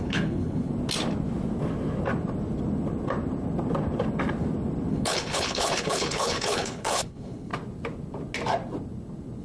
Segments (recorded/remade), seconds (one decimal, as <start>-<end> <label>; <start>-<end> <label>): 0.0-0.7 remade; 0.7-4.9 recorded; 4.9-7.5 remade; 7.5-9.4 recorded